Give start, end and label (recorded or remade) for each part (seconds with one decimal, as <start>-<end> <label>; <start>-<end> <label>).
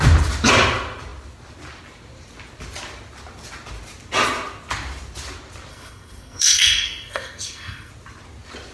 0.0-5.7 recorded; 5.7-7.9 remade; 7.9-8.7 recorded